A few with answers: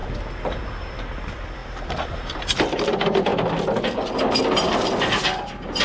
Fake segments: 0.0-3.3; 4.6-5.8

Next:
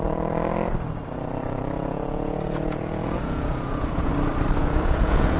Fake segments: 1.4-4.1; 4.6-5.4

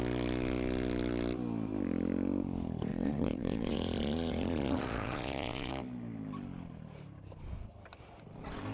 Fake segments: 2.9-5.7

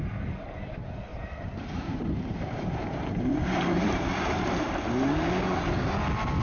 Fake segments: 1.1-4.9

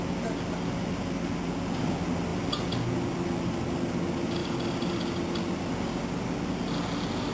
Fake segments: none

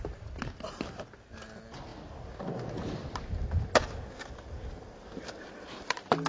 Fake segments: none

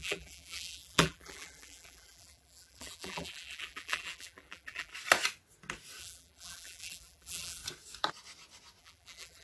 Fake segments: 0.0-4.9; 6.0-7.6; 8.8-9.4

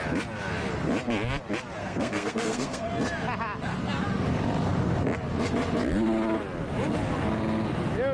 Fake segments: 1.8-2.9